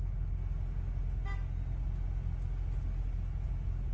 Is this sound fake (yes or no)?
no